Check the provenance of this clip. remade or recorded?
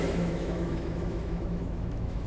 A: remade